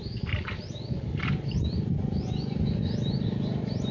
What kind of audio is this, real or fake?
real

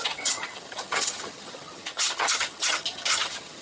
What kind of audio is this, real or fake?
fake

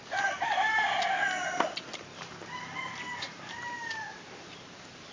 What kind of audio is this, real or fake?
fake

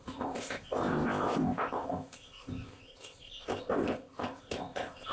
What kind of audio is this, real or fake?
fake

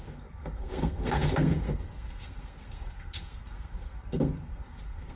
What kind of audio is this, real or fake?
fake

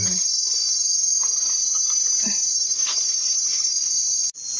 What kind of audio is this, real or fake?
real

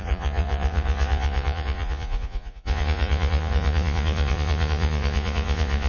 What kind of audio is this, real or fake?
fake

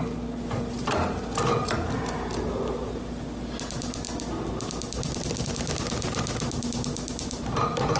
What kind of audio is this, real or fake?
real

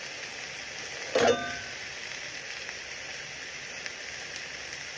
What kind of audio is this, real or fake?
real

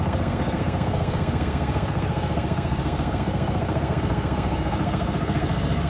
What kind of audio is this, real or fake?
fake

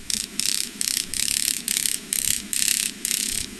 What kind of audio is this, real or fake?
fake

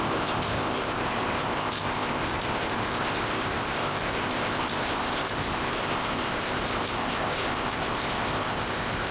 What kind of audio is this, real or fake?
fake